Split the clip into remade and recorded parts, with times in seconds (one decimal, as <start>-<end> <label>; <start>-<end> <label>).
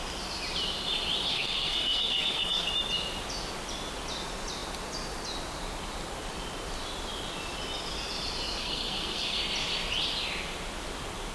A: 0.0-1.3 recorded; 1.3-2.7 remade; 2.7-8.6 recorded; 8.6-9.4 remade; 9.4-11.3 recorded